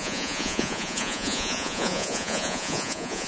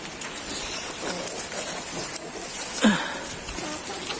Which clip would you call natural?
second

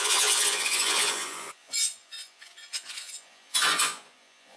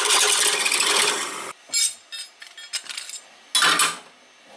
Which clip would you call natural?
second